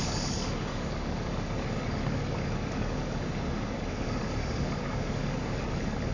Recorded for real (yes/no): no